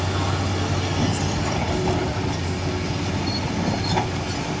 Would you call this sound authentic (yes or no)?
yes